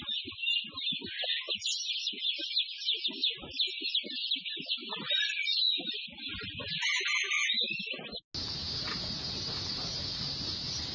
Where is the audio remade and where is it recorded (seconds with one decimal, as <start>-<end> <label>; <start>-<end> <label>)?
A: 0.0-10.9 recorded